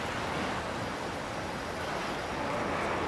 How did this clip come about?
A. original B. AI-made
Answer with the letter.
A